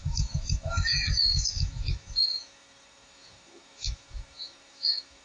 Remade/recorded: remade